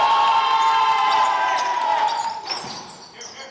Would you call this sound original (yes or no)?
yes